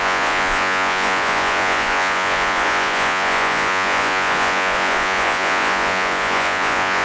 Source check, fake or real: fake